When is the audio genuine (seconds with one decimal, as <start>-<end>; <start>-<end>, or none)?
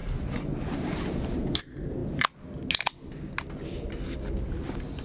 1.6-5.0